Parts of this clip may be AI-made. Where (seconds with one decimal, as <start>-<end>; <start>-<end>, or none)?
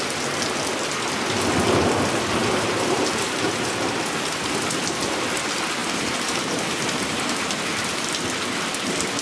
2.4-3.5; 5.8-8.1